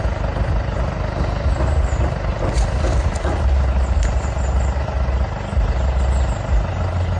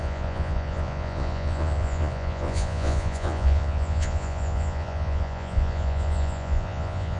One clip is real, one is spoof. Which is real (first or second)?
first